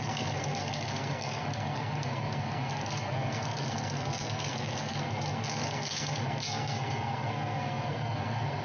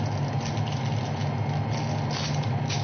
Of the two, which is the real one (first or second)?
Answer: second